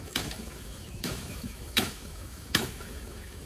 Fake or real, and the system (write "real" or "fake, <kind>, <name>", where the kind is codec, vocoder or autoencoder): fake, autoencoder, DAC-VAE